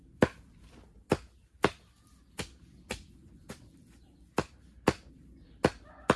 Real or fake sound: real